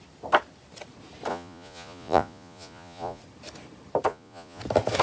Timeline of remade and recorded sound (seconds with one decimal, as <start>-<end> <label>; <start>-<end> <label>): 0.0-1.3 recorded; 1.3-3.2 remade; 3.2-4.1 recorded; 4.1-4.6 remade; 4.6-5.0 recorded